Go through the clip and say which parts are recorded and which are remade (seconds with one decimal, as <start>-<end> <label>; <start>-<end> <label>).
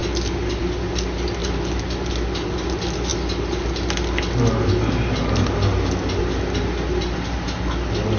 0.0-8.2 recorded